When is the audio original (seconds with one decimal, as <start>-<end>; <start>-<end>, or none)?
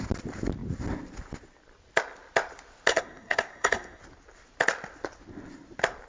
0.0-2.9; 4.0-6.1